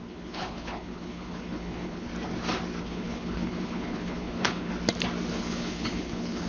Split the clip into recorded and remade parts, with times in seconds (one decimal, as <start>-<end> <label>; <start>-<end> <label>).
0.0-2.1 remade; 2.1-2.8 recorded; 2.8-4.7 remade; 4.7-5.3 recorded; 5.3-6.5 remade